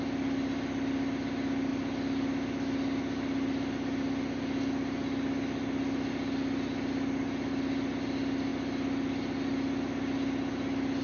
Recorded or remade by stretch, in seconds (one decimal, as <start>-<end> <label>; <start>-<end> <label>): 0.0-11.0 recorded